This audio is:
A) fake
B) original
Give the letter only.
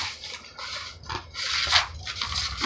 B